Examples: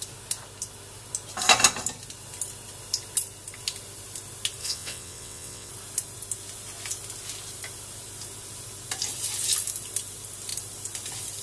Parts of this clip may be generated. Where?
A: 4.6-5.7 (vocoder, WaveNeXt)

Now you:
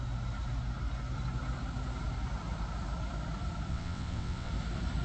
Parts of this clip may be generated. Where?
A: 3.7-4.5 (vocoder, WaveNeXt)

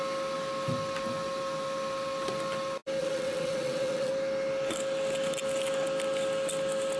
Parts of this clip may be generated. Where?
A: 3.0-4.1 (vocoder, WaveNeXt)